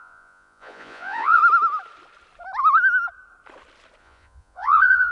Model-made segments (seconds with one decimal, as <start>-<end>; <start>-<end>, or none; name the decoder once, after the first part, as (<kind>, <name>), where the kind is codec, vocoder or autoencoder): 0.0-1.4 (vocoder, Vocos); 4.0-5.1